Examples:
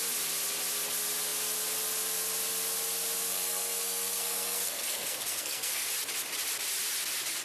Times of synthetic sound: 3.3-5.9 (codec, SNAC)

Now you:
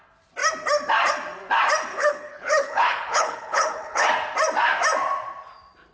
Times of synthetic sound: 1.9-4.1 (codec, HILCodec)

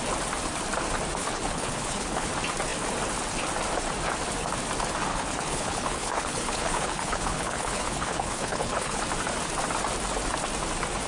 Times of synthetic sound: 1.2-2.3 (codec, HILCodec); 5.1-9.0

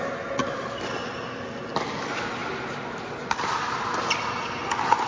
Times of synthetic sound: none

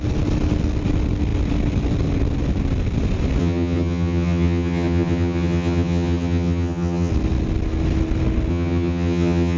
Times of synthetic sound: 3.4-7.1 (vocoder, HiFi-GAN); 8.5-9.6

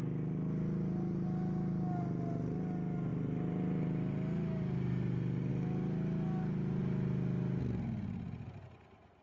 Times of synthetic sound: 3.1-5.5 (vocoder, BigVGAN v2)